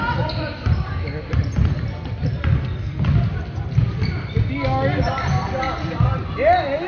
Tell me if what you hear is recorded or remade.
recorded